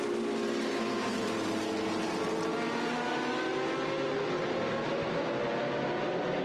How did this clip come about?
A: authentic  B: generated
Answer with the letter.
A